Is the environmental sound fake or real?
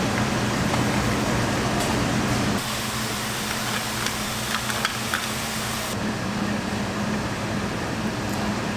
fake